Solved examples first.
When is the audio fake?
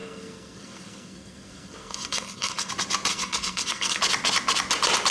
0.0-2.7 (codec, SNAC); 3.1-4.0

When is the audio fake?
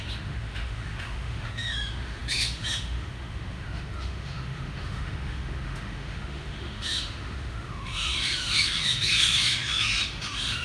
0.0-10.6 (autoencoder, DAC-VAE)